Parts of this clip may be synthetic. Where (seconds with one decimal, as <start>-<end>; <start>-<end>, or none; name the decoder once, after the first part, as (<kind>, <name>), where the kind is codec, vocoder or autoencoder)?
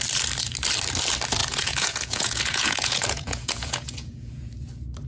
1.4-4.5 (vocoder, Vocos)